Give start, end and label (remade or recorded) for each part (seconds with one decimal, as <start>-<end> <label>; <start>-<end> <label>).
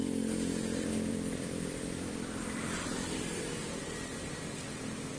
0.0-1.1 recorded; 1.1-3.4 remade; 3.4-5.2 recorded